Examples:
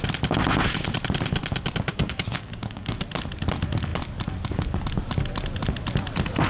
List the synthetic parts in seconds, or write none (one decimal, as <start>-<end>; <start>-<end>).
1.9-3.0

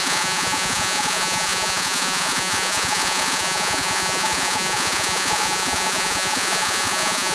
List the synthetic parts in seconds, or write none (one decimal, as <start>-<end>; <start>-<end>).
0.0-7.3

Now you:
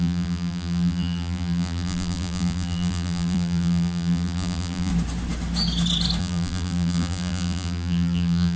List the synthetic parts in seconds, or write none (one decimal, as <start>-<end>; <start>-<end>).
0.0-4.9; 6.2-8.6